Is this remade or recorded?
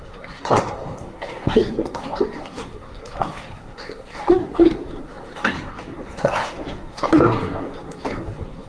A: remade